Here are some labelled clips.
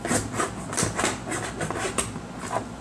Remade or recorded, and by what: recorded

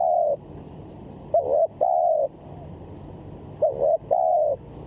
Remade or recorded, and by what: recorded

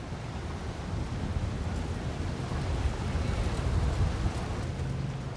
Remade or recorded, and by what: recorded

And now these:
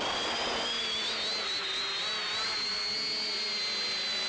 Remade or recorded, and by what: recorded